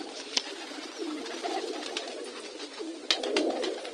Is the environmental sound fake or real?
real